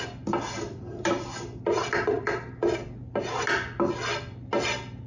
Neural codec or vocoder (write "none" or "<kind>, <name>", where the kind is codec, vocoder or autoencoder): none